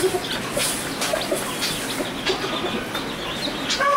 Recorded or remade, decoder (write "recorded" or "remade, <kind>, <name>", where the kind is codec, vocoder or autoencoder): recorded